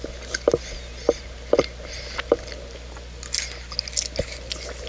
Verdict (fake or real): real